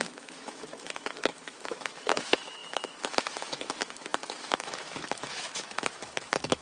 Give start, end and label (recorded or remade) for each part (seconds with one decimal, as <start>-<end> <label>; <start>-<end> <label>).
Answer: 0.0-6.6 remade